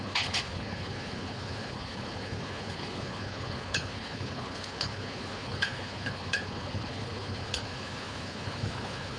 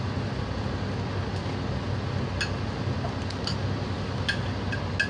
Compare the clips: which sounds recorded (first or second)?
second